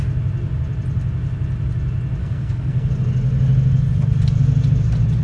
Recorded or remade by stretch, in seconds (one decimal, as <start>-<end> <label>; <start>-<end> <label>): 0.0-2.2 recorded; 2.2-2.9 remade; 2.9-5.2 recorded